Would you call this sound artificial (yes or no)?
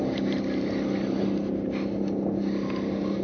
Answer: no